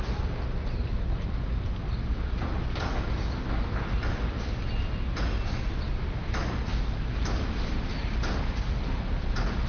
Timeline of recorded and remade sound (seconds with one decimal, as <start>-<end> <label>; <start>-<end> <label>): 0.0-9.7 recorded